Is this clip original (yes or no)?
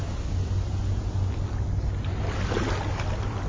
yes